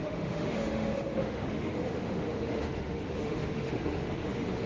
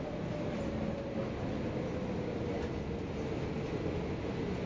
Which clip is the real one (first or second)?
second